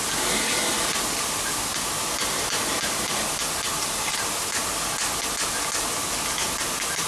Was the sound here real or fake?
real